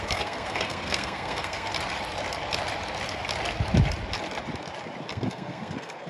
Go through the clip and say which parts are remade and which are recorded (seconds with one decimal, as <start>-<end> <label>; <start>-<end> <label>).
0.0-1.7 remade; 1.7-5.1 recorded; 5.1-6.1 remade